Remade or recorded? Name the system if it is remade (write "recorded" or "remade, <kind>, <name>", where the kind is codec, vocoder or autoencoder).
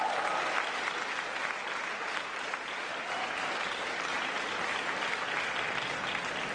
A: recorded